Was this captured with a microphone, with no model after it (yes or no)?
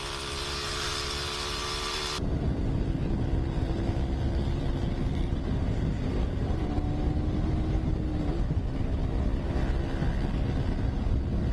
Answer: yes